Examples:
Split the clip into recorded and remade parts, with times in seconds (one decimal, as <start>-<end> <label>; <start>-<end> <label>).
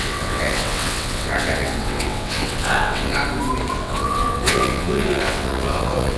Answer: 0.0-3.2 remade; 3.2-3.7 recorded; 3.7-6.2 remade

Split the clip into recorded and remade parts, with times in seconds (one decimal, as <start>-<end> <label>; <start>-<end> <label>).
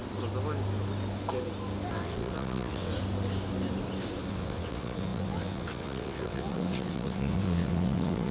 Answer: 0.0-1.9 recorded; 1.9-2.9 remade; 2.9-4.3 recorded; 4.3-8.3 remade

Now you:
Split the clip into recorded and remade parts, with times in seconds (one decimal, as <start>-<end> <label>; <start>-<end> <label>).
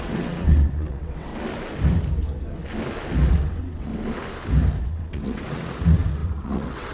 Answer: 0.0-1.3 remade; 1.3-3.3 recorded; 3.3-3.9 remade; 3.9-4.8 recorded; 4.8-6.9 remade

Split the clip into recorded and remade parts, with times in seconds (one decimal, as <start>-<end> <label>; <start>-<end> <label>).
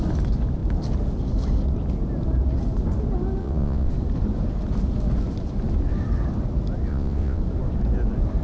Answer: 0.0-3.4 recorded; 3.4-3.9 remade; 3.9-6.9 recorded; 6.9-7.4 remade; 7.4-8.4 recorded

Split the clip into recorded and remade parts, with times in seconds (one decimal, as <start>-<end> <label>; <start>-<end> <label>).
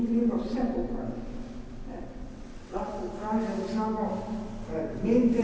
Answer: 0.0-0.8 remade; 0.8-2.0 recorded; 2.0-2.9 remade; 2.9-5.4 recorded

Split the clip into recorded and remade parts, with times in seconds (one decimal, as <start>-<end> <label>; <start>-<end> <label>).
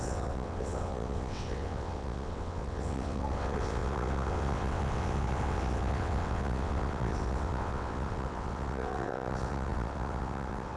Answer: 0.0-10.8 remade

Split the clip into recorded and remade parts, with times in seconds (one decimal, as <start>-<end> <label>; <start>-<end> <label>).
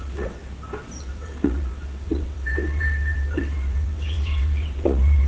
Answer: 0.0-0.4 remade; 0.4-1.0 recorded; 1.0-5.3 remade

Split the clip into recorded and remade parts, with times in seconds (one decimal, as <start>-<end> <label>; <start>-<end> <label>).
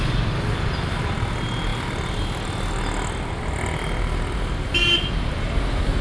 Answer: 0.0-6.0 recorded